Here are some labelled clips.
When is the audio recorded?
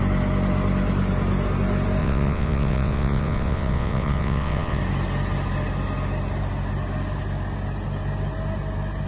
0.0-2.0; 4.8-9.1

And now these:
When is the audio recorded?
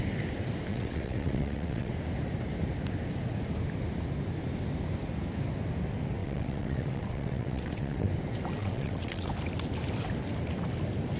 0.0-0.7; 1.9-6.2; 8.1-8.6; 9.3-11.2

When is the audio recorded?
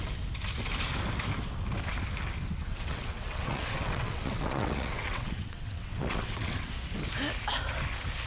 0.0-2.6; 6.7-8.3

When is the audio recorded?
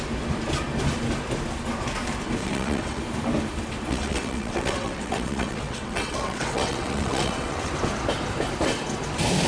0.0-2.4; 3.0-3.9; 7.7-9.5